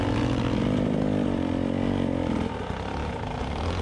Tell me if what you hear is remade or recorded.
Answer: recorded